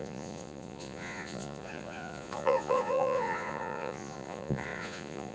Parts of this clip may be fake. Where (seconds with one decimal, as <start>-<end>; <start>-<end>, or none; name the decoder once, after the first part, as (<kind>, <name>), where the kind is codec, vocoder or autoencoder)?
0.0-5.3 (vocoder, Vocos)